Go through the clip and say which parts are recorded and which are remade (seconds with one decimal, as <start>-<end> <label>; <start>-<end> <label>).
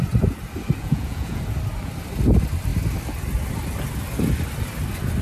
0.0-0.8 recorded; 0.8-1.4 remade; 1.4-5.2 recorded